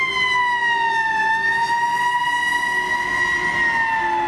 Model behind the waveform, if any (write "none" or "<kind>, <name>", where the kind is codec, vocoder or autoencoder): none